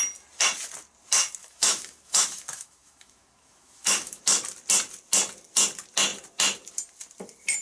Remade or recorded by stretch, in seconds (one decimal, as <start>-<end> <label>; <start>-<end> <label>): 0.0-1.4 recorded; 1.4-4.2 remade; 4.2-7.6 recorded